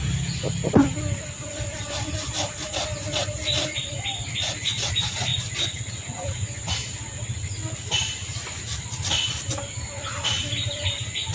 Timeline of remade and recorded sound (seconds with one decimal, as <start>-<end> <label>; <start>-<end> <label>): 0.0-11.3 recorded